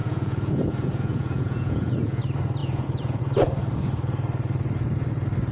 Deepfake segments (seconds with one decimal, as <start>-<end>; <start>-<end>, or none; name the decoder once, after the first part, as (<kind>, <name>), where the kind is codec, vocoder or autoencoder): 0.0-2.2 (vocoder, Vocos); 2.6-3.2